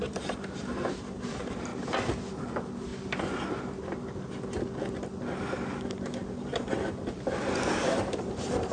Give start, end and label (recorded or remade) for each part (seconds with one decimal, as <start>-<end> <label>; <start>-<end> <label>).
0.0-1.7 remade; 1.7-2.4 recorded; 2.4-2.9 remade; 2.9-8.0 recorded; 8.0-8.7 remade